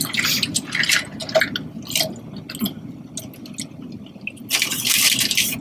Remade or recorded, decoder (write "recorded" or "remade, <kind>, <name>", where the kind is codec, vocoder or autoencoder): recorded